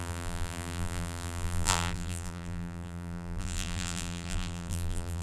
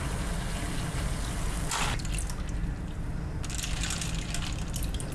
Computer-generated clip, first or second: first